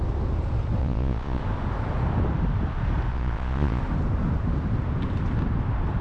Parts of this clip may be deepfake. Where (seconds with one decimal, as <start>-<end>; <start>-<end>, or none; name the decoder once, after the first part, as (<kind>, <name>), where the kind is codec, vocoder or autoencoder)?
0.8-1.4 (vocoder, Vocos); 3.1-3.8